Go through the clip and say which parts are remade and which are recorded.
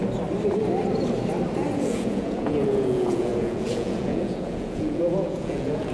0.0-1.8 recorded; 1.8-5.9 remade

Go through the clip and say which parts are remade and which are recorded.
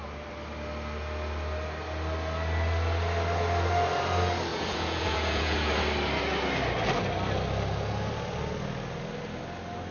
0.0-4.5 recorded; 4.5-5.7 remade; 5.7-9.9 recorded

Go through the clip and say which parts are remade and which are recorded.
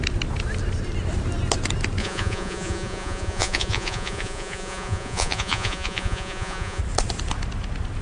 0.0-2.0 recorded; 2.0-6.8 remade; 6.8-8.0 recorded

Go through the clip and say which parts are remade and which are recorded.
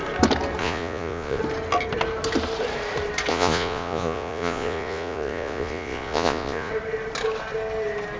0.0-0.6 recorded; 0.6-1.4 remade; 1.4-3.3 recorded; 3.3-6.7 remade; 6.7-8.2 recorded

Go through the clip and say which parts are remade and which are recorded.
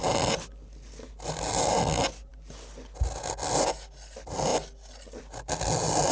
0.0-6.1 recorded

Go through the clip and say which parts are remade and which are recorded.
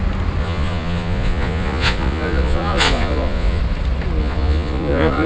0.0-0.4 recorded; 0.4-3.6 remade; 3.6-4.2 recorded; 4.2-5.3 remade